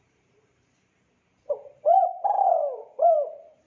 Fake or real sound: fake